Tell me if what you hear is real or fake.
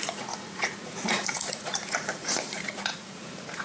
fake